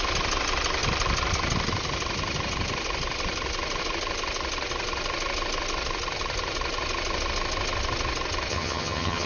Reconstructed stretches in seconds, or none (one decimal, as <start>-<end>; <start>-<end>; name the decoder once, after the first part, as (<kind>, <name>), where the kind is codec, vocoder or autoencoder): 8.5-9.3 (vocoder, HiFi-GAN)